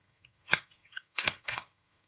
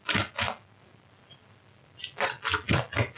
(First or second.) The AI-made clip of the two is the first